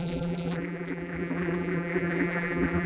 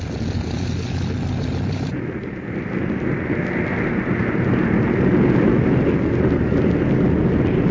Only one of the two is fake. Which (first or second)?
first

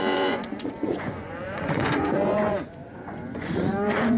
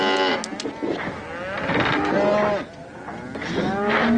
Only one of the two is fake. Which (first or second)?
first